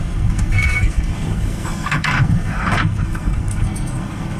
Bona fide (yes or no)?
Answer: no